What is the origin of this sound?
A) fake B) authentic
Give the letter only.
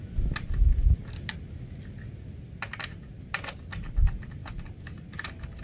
B